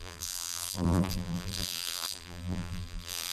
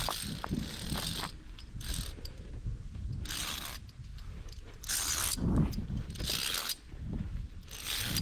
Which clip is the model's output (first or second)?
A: first